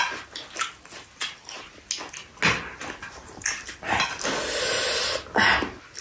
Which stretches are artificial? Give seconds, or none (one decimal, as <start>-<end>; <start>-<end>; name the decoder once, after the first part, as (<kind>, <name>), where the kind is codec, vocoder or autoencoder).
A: none

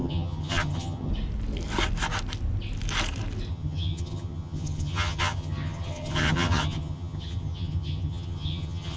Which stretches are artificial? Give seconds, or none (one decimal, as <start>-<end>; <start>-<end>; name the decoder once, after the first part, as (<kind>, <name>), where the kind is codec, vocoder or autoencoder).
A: 0.0-1.1 (vocoder, HiFi-GAN); 3.5-9.0

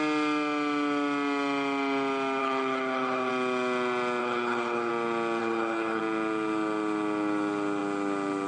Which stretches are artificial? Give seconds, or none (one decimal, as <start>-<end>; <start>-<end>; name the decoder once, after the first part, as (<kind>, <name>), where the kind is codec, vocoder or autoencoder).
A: 2.4-3.3 (codec, HILCodec); 4.2-4.9; 5.4-6.0

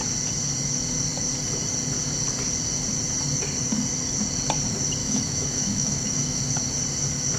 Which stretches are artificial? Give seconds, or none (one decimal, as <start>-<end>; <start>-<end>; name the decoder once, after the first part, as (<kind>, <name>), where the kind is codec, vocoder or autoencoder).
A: 5.0-6.4 (autoencoder, DAC-VAE)